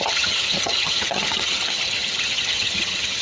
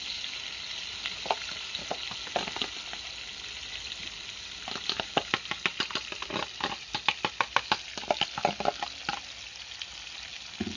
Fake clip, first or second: first